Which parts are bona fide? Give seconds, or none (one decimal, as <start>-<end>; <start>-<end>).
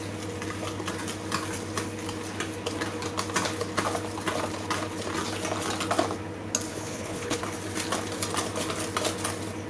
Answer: 0.0-6.7; 7.4-9.7